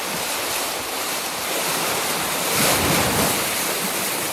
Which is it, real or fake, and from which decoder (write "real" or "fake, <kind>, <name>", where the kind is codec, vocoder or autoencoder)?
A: real